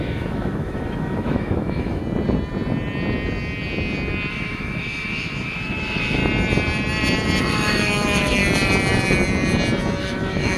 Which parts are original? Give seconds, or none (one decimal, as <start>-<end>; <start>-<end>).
2.0-4.3; 6.2-7.4; 8.4-10.0